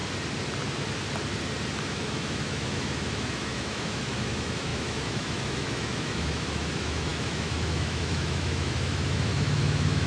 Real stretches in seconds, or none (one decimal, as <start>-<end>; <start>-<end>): 0.0-1.8